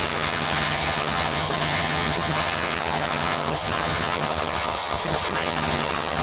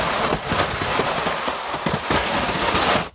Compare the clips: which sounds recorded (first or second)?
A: second